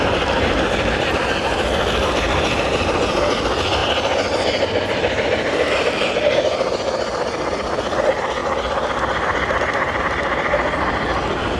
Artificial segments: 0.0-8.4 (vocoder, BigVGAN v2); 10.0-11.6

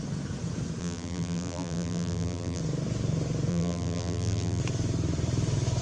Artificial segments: 0.8-2.6 (vocoder, BigVGAN v2); 3.5-4.6

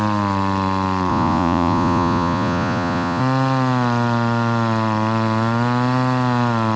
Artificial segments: 1.1-3.2 (vocoder, Vocos)

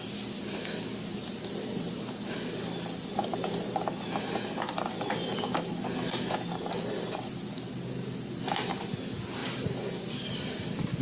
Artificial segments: none

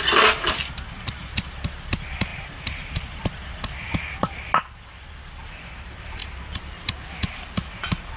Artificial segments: 2.3-3.5 (vocoder, BigVGAN v2); 6.2-6.9

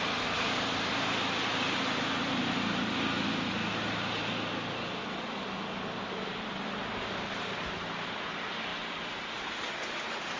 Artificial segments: none